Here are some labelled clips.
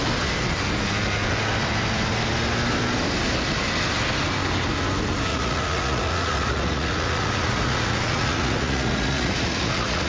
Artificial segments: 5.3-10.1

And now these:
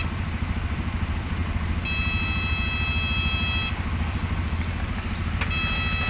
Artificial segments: none

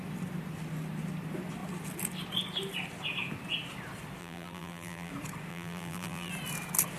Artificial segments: 4.2-5.1; 5.5-6.3